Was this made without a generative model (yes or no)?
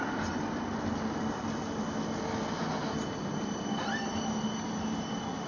yes